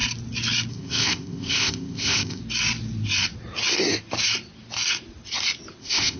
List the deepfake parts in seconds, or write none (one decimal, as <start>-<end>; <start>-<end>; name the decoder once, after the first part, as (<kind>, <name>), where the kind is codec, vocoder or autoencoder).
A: 0.7-2.4 (codec, ZipCodec); 5.8-6.2

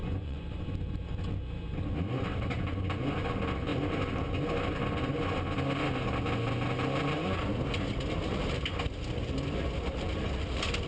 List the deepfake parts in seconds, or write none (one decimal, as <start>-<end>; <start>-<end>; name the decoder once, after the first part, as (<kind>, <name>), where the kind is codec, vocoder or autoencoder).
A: 0.0-0.6 (vocoder, Vocos)

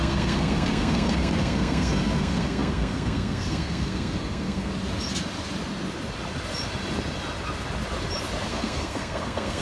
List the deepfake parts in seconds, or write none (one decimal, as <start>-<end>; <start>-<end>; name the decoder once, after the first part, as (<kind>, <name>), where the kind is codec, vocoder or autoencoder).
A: 0.0-4.7 (codec, SNAC); 8.5-9.6

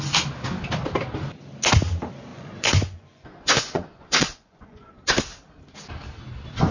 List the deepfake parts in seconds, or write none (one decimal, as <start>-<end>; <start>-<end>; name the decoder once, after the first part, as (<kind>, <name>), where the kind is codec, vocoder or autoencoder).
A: 2.3-4.9 (vocoder, Vocos)

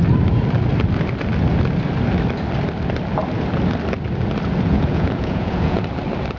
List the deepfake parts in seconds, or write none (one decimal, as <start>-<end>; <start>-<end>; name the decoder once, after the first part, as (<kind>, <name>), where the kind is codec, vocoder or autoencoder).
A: 4.7-5.8 (vocoder, Vocos)

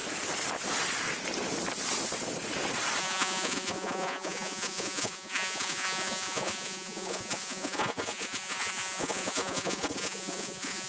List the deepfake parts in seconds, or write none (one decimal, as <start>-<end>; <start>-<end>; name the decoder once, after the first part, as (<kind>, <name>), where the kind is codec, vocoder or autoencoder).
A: 3.0-10.9 (vocoder, Vocos)

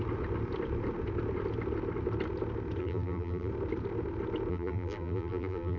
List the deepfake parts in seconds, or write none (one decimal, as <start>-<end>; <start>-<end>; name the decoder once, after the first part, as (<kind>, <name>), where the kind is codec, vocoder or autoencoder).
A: 2.8-3.5 (vocoder, BigVGAN v2); 4.5-5.8

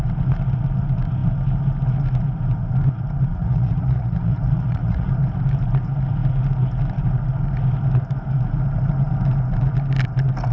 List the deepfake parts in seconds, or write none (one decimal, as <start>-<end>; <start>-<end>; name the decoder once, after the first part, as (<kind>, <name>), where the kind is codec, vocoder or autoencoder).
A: 3.3-5.1 (vocoder, Vocos)